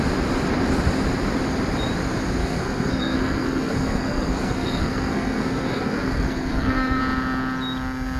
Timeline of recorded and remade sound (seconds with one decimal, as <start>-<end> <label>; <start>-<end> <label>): 0.0-2.4 recorded; 2.4-7.0 remade; 7.0-8.2 recorded